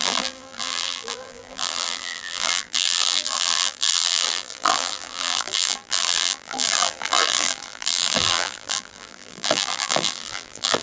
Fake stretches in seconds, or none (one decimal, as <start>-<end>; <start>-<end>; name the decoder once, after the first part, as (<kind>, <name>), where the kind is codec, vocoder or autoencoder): 0.0-10.8 (vocoder, BigVGAN v2)